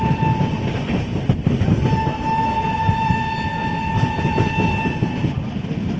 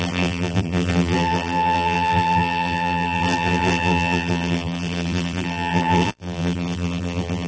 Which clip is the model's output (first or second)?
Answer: second